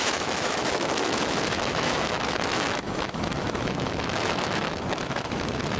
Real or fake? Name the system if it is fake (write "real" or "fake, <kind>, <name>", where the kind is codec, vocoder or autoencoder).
fake, autoencoder, DAC-VAE